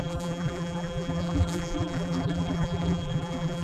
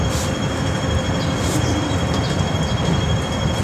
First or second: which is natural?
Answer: second